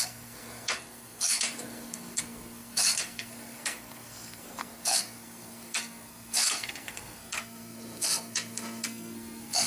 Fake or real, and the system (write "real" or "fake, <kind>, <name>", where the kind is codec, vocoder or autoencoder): fake, codec, SNAC